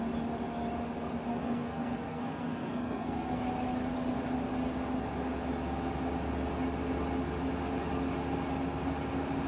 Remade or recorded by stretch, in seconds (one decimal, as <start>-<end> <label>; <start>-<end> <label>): 0.0-1.3 recorded; 1.3-3.4 remade; 3.4-9.5 recorded